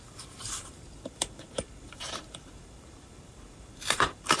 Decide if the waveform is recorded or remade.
remade